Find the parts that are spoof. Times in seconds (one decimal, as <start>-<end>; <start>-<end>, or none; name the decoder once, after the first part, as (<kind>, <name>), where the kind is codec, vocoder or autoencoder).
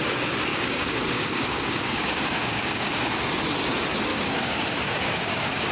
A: 0.5-3.1 (codec, DAC); 4.1-5.7